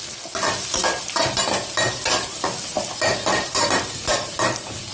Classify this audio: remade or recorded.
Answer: recorded